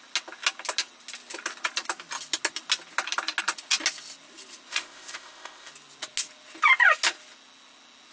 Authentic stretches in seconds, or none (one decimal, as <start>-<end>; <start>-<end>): 0.0-4.7; 5.7-8.1